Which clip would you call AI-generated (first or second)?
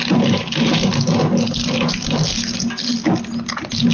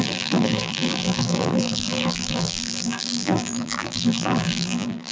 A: second